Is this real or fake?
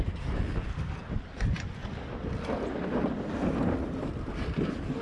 real